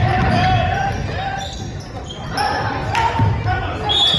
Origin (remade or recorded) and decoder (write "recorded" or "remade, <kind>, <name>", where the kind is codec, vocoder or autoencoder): recorded